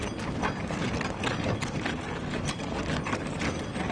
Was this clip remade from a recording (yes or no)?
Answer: no